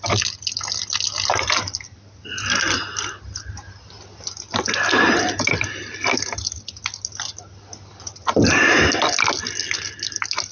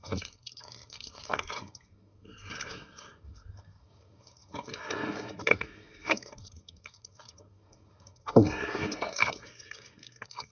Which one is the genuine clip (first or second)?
first